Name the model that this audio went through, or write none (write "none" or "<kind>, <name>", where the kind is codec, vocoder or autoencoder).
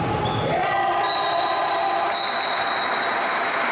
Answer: none